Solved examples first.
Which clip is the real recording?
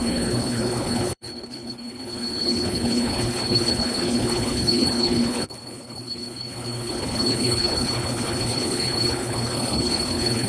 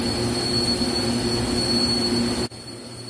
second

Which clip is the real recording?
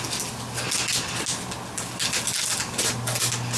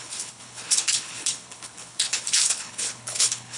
first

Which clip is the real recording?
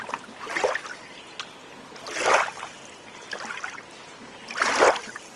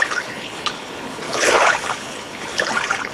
first